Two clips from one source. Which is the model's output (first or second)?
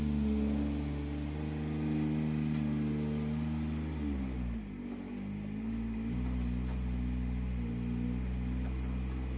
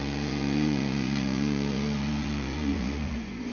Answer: second